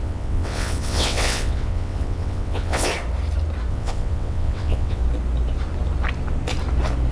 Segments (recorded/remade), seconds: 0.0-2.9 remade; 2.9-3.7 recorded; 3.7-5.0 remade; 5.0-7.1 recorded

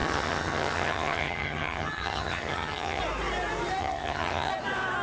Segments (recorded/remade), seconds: 0.0-3.0 remade; 3.0-3.8 recorded; 3.8-4.5 remade; 4.5-5.0 recorded

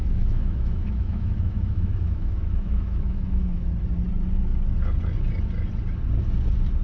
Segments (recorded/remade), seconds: 0.0-3.7 remade; 3.7-6.8 recorded

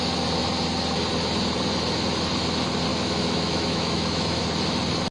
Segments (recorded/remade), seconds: 0.0-2.9 recorded; 2.9-4.4 remade; 4.4-5.1 recorded

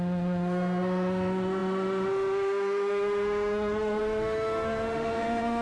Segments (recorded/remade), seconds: 0.0-5.6 remade

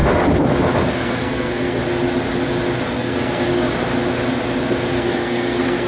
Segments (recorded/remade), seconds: 0.0-0.9 recorded; 0.9-1.8 remade; 1.8-3.0 recorded; 3.0-3.5 remade; 3.5-4.9 recorded; 4.9-5.9 remade